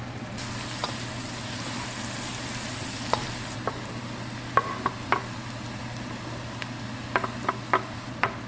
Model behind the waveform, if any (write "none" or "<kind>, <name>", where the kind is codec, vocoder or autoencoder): none